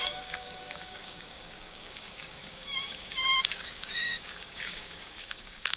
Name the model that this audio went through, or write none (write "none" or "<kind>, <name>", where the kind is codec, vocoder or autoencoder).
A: codec, DAC